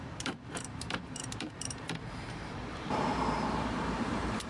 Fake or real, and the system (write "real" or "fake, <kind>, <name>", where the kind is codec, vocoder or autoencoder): fake, vocoder, BigVGAN v2